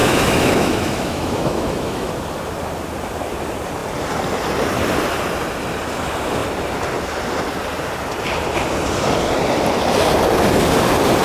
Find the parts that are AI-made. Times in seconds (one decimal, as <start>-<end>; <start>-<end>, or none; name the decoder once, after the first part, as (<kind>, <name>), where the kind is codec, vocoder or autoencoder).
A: 0.0-2.1 (autoencoder, DAC-VAE)